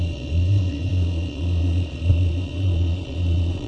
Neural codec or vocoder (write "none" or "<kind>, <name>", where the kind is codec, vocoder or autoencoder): vocoder, Vocos